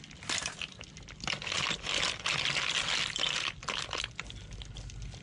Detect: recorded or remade recorded